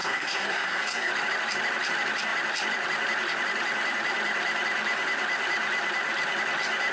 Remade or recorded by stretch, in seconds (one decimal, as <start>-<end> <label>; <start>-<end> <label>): 0.0-1.1 remade; 1.1-6.9 recorded